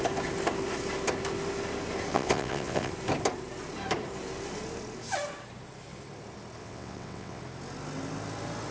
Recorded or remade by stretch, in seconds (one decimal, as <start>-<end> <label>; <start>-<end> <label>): 0.0-2.1 recorded; 2.1-2.9 remade; 2.9-6.6 recorded; 6.6-7.4 remade; 7.4-8.7 recorded